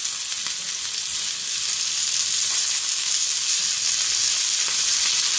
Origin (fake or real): real